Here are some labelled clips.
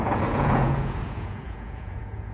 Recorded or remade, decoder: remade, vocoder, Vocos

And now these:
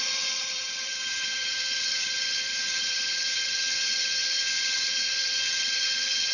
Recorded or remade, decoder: remade, vocoder, HiFi-GAN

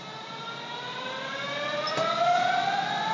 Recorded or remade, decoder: recorded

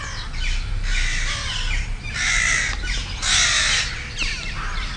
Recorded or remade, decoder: recorded